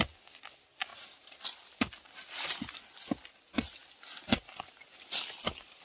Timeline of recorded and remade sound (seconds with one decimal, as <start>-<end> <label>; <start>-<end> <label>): 0.0-5.8 recorded